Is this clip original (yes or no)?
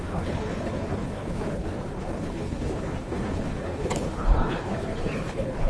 no